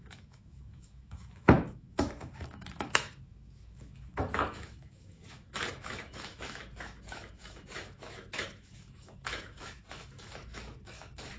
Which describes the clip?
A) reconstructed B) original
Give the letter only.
A